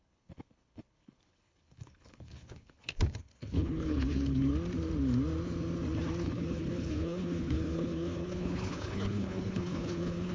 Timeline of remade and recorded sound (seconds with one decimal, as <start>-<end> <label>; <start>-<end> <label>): 0.0-4.5 remade; 4.5-6.2 recorded; 6.2-10.3 remade